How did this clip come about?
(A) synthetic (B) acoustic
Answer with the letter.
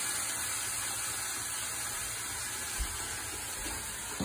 B